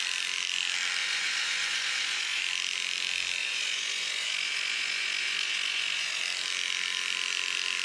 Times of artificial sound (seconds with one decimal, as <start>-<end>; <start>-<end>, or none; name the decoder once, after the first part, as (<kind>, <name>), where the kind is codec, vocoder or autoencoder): 1.0-2.4 (vocoder, Vocos); 3.4-6.2

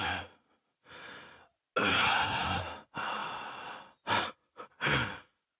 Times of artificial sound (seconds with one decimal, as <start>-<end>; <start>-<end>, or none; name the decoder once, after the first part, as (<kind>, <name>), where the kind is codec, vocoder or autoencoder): 1.9-2.6 (codec, SNAC)

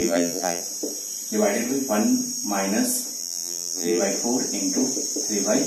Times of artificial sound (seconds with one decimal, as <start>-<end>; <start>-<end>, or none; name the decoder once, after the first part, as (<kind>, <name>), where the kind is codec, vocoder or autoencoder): 0.0-0.6 (vocoder, BigVGAN v2); 3.2-4.0

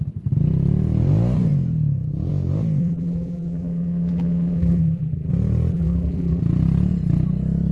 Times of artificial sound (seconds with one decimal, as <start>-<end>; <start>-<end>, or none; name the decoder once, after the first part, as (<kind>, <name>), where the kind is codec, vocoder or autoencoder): 2.8-5.3 (vocoder, BigVGAN v2); 5.7-6.4

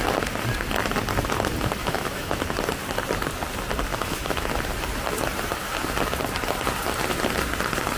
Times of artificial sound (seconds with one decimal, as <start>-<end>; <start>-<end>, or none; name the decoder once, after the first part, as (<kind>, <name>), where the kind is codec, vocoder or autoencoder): 1.8-2.4 (autoencoder, DAC-VAE); 3.9-4.5

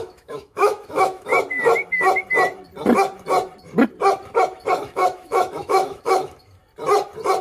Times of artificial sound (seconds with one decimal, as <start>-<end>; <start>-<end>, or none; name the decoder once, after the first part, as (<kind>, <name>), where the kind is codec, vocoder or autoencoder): 0.0-1.3 (autoencoder, DAC-VAE); 4.7-6.6